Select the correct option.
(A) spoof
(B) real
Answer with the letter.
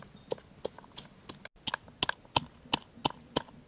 B